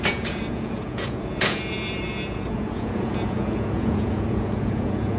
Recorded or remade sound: remade